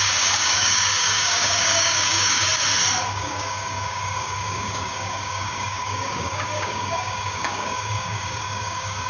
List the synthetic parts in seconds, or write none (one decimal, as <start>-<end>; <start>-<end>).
0.0-2.5; 3.1-9.1